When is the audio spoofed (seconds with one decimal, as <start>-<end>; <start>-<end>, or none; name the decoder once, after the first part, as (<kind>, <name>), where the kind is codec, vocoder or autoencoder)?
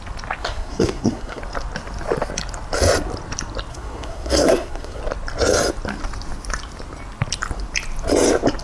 0.4-1.4 (codec, SNAC); 3.7-5.0